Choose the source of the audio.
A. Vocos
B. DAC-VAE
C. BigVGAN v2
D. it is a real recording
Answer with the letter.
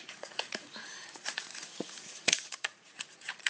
A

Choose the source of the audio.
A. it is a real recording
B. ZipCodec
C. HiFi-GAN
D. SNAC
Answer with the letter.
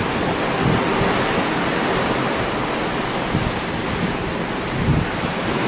A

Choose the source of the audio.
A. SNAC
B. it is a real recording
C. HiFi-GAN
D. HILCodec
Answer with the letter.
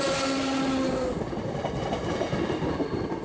B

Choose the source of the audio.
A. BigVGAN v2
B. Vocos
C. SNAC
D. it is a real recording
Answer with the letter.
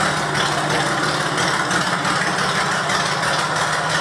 D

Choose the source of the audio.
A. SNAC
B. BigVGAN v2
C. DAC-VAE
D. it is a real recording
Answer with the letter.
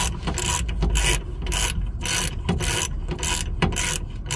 D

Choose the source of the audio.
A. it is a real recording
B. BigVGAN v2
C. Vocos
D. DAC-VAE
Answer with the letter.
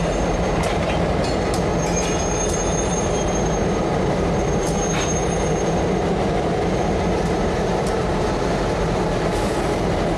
B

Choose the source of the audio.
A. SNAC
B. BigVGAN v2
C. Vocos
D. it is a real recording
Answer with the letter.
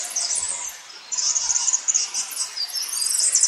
D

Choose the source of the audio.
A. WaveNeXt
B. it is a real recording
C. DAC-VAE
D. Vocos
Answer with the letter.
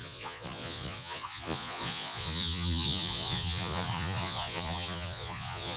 D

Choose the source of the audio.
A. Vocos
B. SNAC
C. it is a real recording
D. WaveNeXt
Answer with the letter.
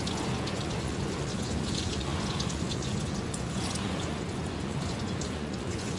A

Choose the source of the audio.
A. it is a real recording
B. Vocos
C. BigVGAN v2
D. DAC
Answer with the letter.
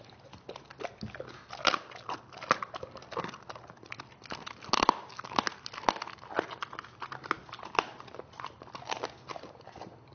A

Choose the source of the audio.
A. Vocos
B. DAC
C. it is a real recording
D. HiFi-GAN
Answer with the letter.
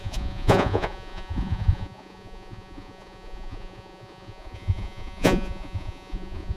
A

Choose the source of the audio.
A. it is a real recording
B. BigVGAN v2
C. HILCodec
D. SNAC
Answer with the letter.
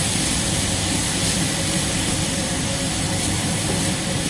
B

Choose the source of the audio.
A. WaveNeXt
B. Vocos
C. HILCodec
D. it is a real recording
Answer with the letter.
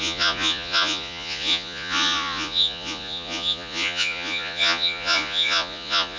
B